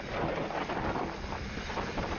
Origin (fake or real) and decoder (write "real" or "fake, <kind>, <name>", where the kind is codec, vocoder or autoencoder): real